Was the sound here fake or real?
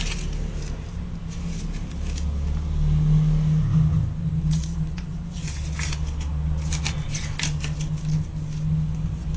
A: real